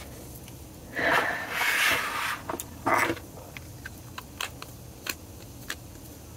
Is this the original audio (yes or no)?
yes